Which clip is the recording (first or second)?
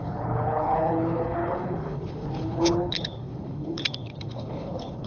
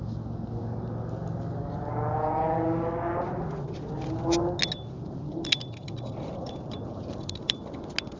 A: second